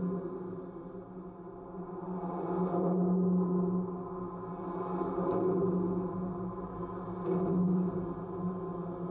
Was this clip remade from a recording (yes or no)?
no